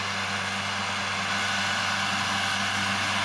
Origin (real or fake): real